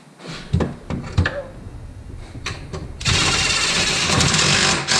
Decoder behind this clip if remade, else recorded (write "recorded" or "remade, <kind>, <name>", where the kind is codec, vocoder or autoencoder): recorded